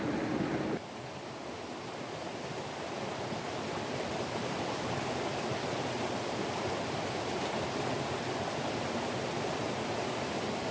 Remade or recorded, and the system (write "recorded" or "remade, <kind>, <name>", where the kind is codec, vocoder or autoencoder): recorded